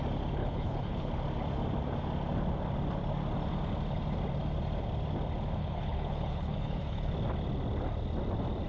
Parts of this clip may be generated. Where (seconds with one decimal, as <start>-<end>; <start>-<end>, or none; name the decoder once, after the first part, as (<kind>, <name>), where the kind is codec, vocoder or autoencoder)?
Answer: 0.4-1.1 (codec, HILCodec); 5.6-7.1